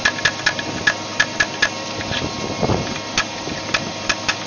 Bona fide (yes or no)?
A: yes